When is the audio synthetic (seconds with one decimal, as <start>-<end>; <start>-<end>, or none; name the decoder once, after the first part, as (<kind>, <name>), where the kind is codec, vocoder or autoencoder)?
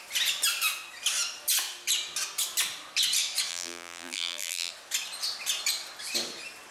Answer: 3.5-4.7 (vocoder, BigVGAN v2)